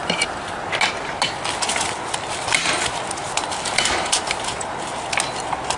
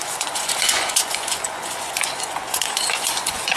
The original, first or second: first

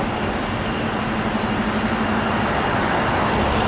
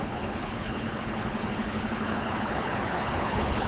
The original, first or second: first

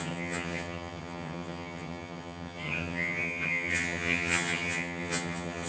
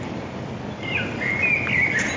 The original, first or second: second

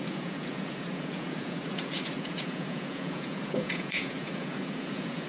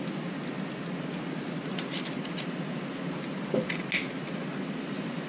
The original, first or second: second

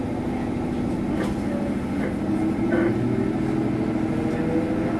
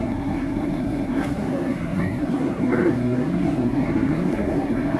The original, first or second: first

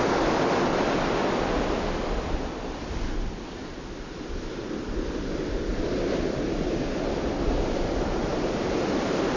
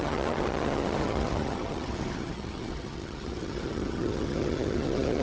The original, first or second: first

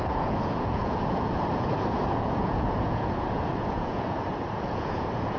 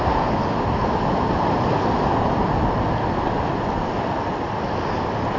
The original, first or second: second